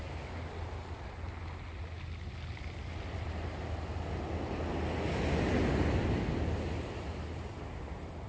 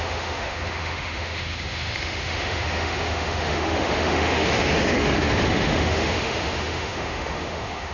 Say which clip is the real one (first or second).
first